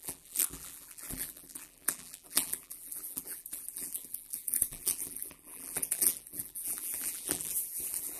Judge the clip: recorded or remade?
remade